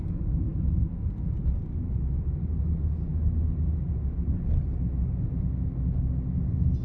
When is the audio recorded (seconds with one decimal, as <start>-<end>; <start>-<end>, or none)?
0.0-6.8